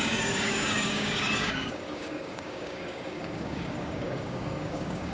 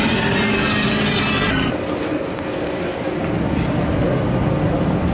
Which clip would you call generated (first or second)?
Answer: first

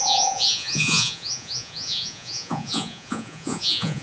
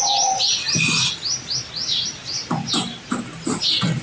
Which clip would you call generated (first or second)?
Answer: first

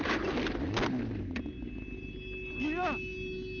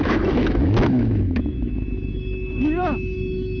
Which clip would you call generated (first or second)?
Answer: second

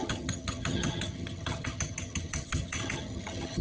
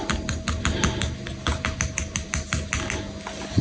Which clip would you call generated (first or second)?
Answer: first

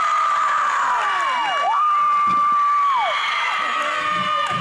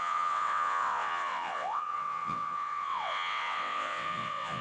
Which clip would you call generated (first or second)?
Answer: second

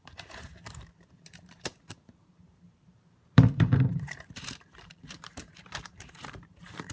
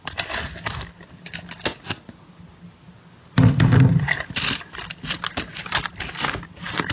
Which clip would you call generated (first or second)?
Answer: first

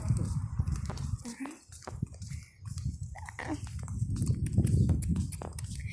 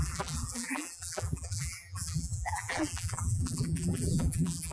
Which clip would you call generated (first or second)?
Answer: second